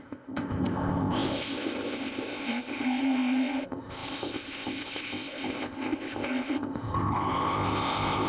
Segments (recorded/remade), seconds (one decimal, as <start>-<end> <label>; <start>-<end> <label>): 0.0-8.3 remade